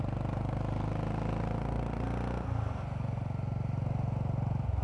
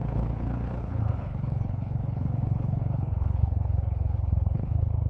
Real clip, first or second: first